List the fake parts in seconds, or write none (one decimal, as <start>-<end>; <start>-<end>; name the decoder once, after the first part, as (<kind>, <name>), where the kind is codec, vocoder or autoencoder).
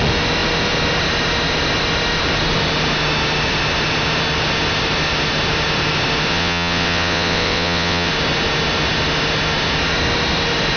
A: 6.3-8.1 (vocoder, WaveNeXt)